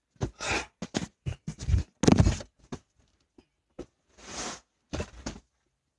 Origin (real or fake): real